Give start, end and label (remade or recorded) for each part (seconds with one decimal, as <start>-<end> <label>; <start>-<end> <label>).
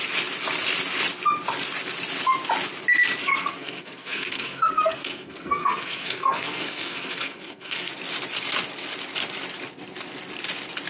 0.0-3.2 recorded; 3.2-7.9 remade; 7.9-10.9 recorded